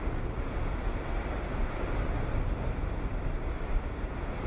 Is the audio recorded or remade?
recorded